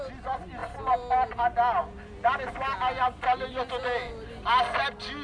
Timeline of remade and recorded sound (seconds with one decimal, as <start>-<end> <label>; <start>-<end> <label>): 0.0-5.2 recorded